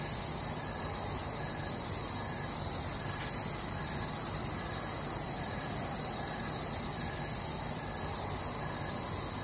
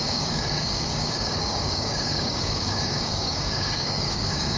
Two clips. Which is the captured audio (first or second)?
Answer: first